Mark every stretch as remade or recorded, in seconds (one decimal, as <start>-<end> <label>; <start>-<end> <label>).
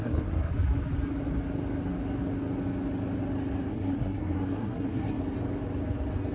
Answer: 0.0-0.5 remade; 0.5-3.7 recorded; 3.7-5.2 remade; 5.2-6.3 recorded